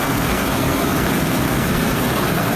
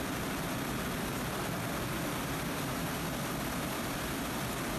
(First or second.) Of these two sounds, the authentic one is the second